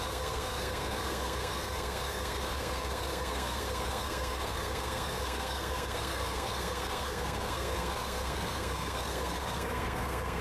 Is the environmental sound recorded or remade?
remade